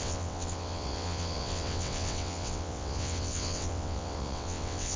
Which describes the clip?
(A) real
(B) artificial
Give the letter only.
B